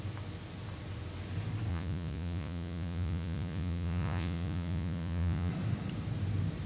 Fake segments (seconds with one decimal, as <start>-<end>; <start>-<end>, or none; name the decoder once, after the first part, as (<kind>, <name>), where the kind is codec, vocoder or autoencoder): 1.7-5.5 (vocoder, Vocos)